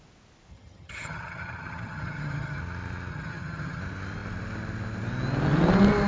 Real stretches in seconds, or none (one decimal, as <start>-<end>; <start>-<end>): 0.0-0.5; 2.6-3.1; 3.8-6.1